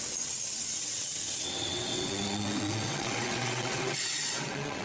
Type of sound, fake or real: fake